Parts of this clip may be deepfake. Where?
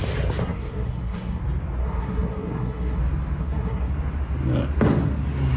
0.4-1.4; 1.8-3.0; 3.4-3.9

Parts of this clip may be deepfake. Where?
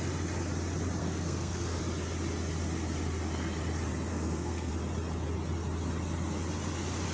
1.0-1.8; 4.1-4.7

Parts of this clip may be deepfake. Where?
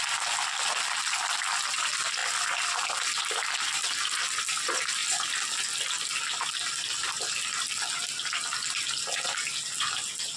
none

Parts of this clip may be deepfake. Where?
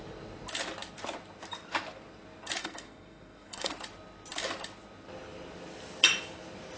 2.6-3.7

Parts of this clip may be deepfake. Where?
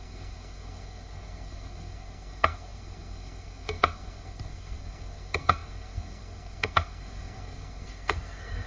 0.0-8.7